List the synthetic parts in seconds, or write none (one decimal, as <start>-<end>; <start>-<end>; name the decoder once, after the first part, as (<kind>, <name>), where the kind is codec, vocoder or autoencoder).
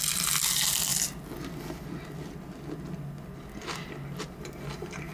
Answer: none